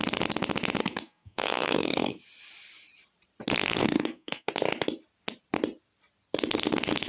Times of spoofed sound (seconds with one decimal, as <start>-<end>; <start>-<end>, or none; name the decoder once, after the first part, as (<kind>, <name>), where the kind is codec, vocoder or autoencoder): 0.8-2.2 (codec, SNAC); 3.8-4.5